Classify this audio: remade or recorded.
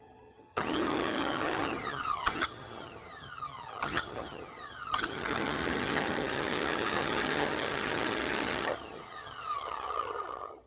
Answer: remade